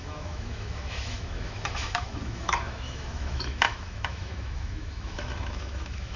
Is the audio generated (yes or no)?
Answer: yes